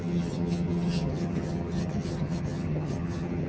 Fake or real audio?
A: fake